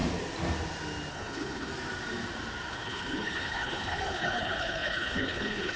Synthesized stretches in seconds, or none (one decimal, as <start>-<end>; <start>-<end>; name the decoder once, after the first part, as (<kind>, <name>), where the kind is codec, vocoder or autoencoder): 1.1-1.7 (codec, HILCodec); 2.7-5.8